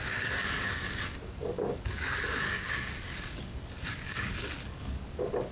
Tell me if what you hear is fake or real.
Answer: fake